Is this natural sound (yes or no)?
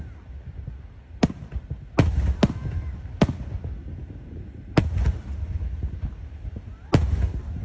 yes